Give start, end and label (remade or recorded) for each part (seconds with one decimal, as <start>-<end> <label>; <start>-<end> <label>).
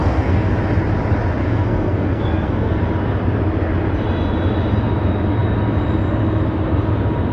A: 0.0-0.5 remade; 0.5-1.4 recorded; 1.4-2.8 remade; 2.8-7.3 recorded